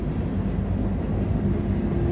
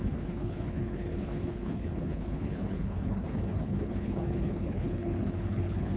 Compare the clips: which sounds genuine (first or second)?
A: first